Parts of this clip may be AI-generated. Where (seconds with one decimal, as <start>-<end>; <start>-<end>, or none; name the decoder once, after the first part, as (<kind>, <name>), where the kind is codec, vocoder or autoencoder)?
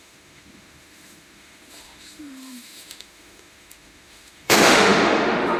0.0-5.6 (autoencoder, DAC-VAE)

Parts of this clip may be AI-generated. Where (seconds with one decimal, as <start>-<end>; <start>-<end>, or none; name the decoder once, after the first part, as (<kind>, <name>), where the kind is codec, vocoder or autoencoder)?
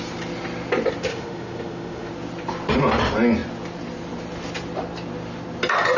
1.1-2.1 (autoencoder, DAC-VAE)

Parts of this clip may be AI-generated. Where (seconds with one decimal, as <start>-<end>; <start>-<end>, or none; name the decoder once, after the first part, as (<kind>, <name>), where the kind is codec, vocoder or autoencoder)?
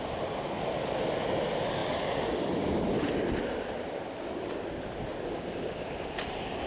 none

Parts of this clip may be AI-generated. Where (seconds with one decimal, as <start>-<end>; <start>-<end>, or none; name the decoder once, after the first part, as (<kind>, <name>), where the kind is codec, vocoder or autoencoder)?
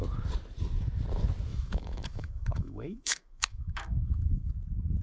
1.5-4.5 (autoencoder, DAC-VAE)